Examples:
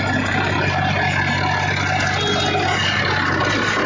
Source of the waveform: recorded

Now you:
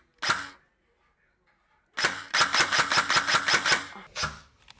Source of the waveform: recorded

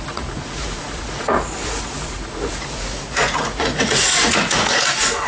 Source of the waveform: remade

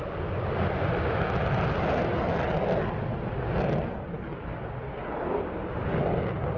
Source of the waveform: recorded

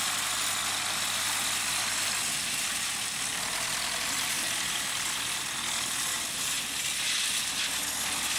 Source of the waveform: recorded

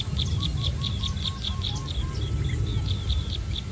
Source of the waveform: recorded